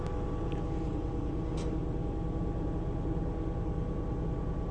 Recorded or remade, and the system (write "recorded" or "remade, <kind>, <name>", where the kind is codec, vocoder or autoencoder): recorded